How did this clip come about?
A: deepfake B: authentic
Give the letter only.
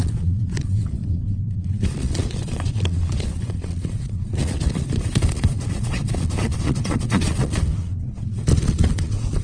A